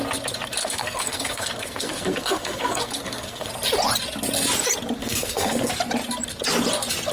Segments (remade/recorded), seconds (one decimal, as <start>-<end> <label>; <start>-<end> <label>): 0.0-0.6 recorded; 0.6-3.5 remade; 3.5-5.0 recorded; 5.0-5.7 remade; 5.7-7.1 recorded